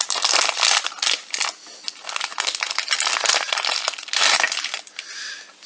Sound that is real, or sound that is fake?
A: real